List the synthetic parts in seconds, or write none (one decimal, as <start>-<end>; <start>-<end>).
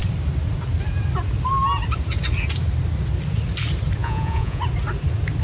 4.0-4.6